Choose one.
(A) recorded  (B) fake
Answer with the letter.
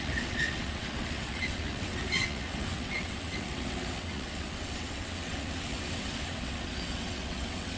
B